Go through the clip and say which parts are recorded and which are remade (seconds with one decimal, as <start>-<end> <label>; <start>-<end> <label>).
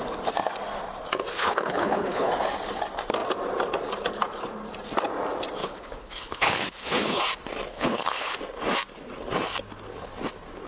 0.0-1.3 recorded; 1.3-2.3 remade; 2.3-5.6 recorded; 5.6-7.2 remade; 7.2-7.7 recorded; 7.7-8.4 remade; 8.4-10.7 recorded